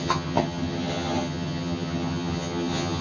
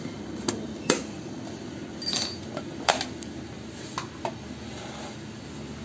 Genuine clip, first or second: second